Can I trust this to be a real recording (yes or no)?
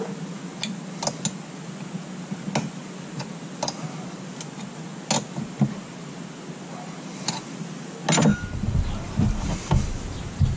yes